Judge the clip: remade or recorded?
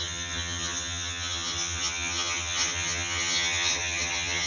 remade